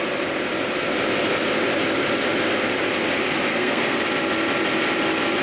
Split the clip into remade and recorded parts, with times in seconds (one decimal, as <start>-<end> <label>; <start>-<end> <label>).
0.0-3.5 recorded; 3.5-4.0 remade; 4.0-5.4 recorded

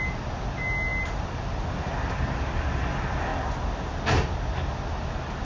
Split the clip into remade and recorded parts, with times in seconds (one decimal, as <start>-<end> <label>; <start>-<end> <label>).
0.0-5.4 recorded

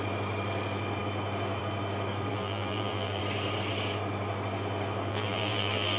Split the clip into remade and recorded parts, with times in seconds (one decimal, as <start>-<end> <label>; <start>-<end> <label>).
0.0-2.3 recorded; 2.3-3.2 remade; 3.2-5.1 recorded; 5.1-6.0 remade

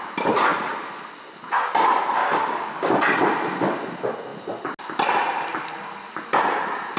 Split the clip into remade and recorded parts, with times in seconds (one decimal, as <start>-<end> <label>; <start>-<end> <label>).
0.0-2.2 recorded; 2.2-3.0 remade; 3.0-7.0 recorded